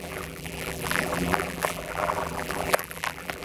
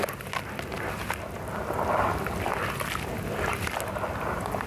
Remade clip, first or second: first